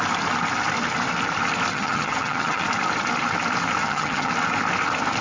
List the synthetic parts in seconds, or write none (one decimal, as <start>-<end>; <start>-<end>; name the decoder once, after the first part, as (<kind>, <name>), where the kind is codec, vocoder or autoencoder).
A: 1.7-2.6 (vocoder, HiFi-GAN); 3.8-4.3